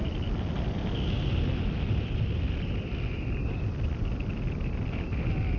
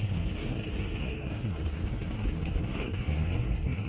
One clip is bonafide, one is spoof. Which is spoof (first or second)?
second